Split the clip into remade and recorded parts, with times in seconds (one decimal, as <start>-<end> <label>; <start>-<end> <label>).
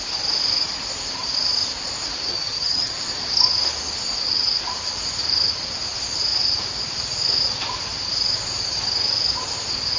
0.0-2.3 recorded; 2.3-3.0 remade; 3.0-10.0 recorded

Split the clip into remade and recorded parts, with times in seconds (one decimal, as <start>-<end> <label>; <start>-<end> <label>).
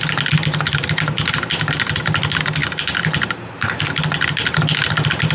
0.0-5.3 recorded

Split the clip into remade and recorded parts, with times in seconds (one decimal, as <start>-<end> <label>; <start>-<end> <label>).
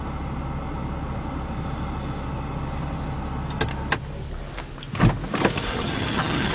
0.0-5.7 recorded; 5.7-6.5 remade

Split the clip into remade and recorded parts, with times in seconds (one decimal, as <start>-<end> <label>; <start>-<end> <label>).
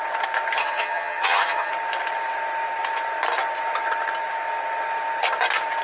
0.0-0.6 recorded; 0.6-1.7 remade; 1.7-5.8 recorded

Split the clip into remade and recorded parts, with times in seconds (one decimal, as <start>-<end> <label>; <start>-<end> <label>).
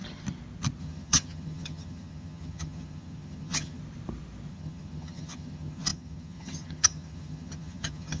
0.0-0.8 recorded; 0.8-3.8 remade; 3.8-4.5 recorded; 4.5-8.2 remade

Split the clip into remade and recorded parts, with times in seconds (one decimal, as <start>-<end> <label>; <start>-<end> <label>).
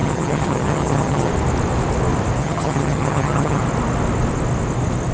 0.0-1.3 remade; 1.3-2.4 recorded; 2.4-3.6 remade; 3.6-5.1 recorded